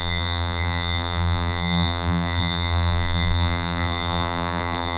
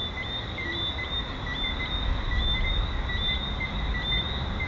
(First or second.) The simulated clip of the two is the first